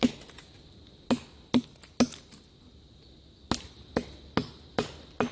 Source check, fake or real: real